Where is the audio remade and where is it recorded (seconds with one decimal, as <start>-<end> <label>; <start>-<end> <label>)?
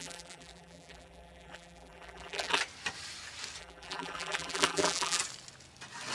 0.0-2.6 remade; 2.6-3.6 recorded; 3.6-5.2 remade; 5.2-6.1 recorded